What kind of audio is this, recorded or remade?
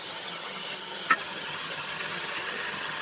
remade